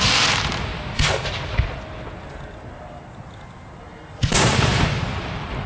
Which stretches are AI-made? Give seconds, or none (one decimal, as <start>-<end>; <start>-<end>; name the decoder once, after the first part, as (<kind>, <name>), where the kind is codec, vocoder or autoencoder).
0.0-0.7 (vocoder, BigVGAN v2); 4.1-5.7